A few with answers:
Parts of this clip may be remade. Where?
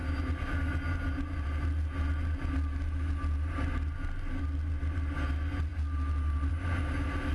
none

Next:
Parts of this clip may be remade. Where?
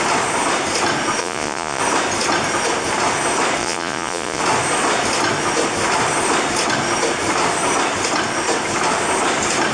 1.2-1.8 (vocoder, Vocos); 3.6-4.4